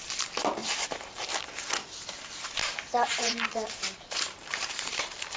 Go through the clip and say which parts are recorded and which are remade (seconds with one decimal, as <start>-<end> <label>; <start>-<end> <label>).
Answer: 0.0-0.6 recorded; 0.6-1.3 remade; 1.3-2.6 recorded; 2.6-5.4 remade